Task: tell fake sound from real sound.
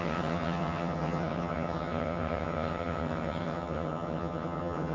fake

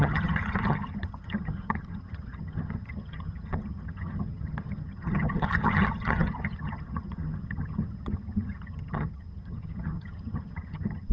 fake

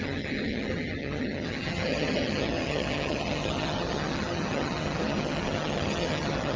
fake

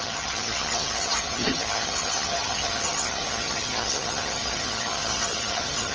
fake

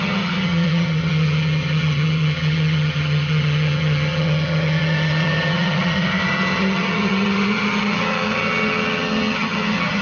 fake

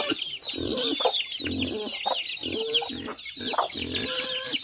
real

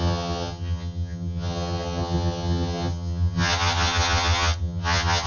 fake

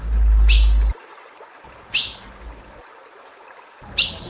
real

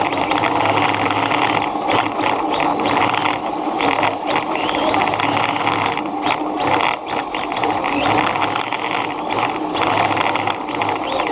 real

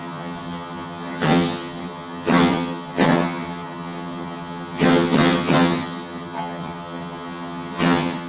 fake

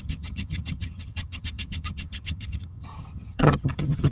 fake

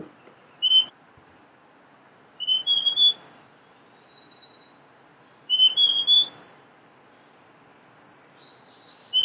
real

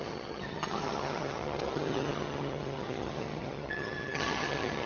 fake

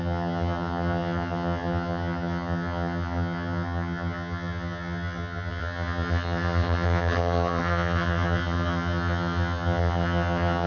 fake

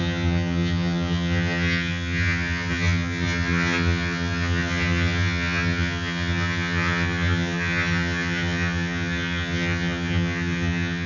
fake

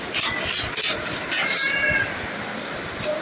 real